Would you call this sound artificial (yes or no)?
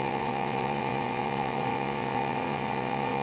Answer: yes